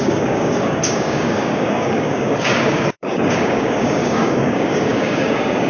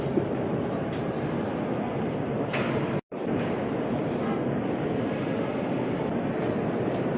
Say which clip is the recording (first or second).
second